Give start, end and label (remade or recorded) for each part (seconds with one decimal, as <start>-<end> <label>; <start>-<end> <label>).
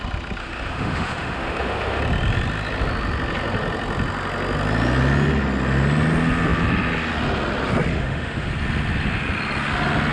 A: 0.0-0.4 recorded; 0.4-2.0 remade; 2.0-7.9 recorded; 7.9-8.5 remade; 8.5-10.1 recorded